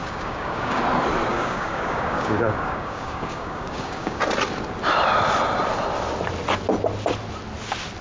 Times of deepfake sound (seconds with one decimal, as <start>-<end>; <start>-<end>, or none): 0.0-0.8; 1.3-4.2